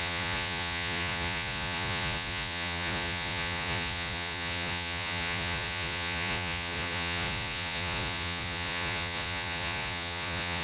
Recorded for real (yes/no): no